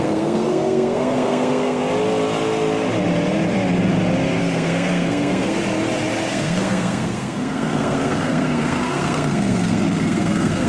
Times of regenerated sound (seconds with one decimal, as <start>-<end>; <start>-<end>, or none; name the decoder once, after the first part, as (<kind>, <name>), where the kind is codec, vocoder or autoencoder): 0.0-1.8 (codec, SNAC); 4.4-5.6; 6.3-10.7

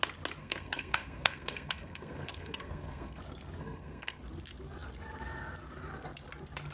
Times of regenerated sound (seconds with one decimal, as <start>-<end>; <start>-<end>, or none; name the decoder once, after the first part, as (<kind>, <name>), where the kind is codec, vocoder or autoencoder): 0.4-3.2 (codec, SNAC); 3.6-4.2

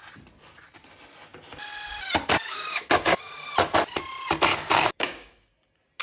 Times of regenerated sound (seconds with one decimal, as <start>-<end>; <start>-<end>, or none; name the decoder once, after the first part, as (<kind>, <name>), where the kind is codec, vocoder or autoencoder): 2.5-3.3 (codec, DAC); 4.5-5.5

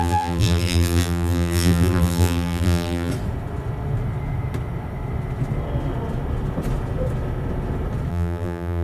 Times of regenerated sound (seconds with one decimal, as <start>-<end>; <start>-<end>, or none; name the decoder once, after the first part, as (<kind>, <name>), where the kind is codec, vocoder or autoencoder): 0.0-3.1 (vocoder, BigVGAN v2); 8.1-8.8

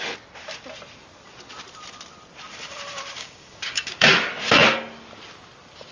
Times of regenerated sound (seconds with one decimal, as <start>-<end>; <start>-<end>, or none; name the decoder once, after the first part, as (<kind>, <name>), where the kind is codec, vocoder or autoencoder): 3.2-4.1 (codec, DAC)

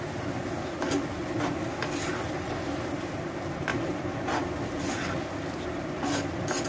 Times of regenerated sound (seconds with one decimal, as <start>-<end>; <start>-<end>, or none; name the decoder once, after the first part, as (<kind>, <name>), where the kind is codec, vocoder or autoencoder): none